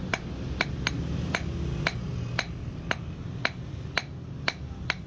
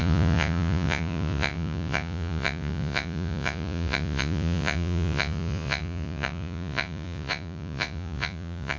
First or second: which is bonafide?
first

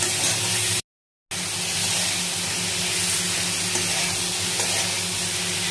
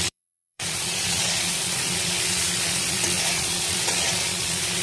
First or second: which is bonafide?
first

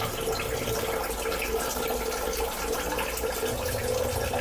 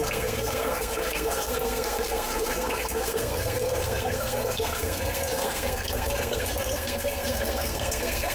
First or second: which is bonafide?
first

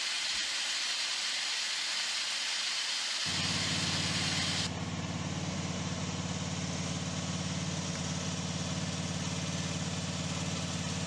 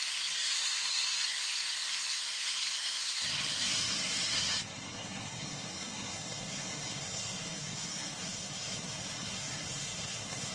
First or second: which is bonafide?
first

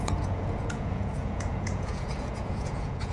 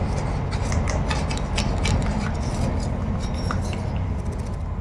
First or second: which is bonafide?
second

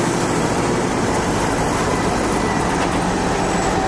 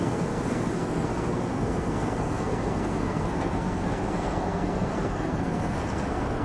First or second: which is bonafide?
first